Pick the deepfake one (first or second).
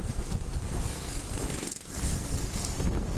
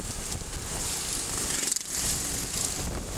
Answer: first